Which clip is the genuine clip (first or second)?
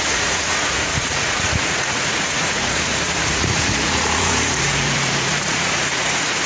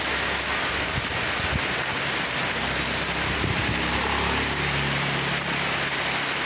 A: second